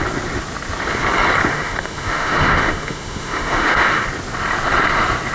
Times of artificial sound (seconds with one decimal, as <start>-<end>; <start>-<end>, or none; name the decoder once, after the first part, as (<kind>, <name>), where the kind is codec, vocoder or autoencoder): 1.5-4.0 (autoencoder, DAC-VAE)